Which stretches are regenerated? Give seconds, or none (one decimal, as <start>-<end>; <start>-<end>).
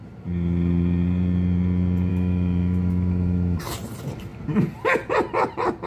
2.1-3.6